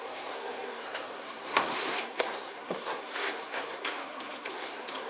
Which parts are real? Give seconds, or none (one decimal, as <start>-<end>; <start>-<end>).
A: none